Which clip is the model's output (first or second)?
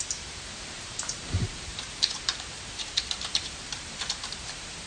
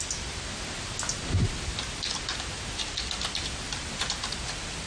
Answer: first